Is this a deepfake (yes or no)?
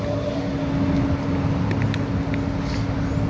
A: no